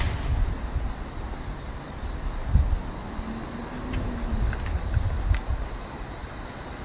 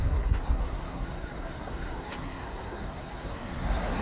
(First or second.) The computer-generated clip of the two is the second